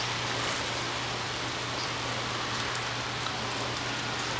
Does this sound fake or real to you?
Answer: real